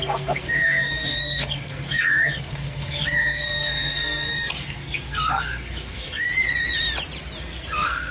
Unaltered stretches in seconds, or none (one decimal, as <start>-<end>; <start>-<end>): 6.3-7.4